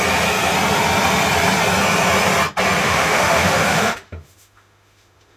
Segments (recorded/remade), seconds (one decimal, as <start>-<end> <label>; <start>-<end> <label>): 0.0-2.8 recorded; 2.8-5.4 remade